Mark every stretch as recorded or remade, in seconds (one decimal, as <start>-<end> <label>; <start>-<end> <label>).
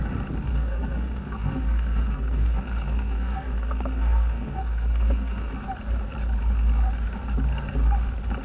0.0-0.5 recorded; 0.5-5.5 remade; 5.5-8.4 recorded